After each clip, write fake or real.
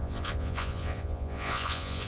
fake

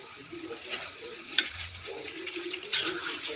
fake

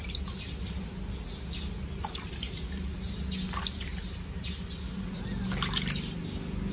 real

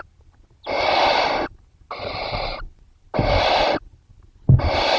real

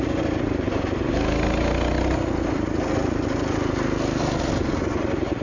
real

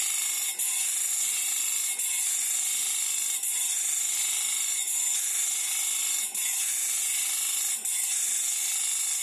real